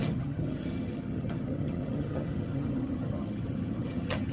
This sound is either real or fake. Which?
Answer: fake